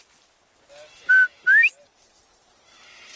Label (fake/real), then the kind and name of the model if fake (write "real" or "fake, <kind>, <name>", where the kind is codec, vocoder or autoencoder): real